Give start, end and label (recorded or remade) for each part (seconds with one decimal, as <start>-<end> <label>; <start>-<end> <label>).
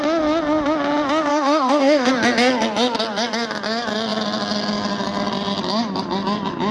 0.0-1.3 recorded; 1.3-2.1 remade; 2.1-6.7 recorded